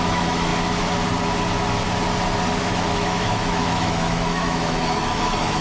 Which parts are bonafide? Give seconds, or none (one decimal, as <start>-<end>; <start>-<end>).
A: 0.5-2.6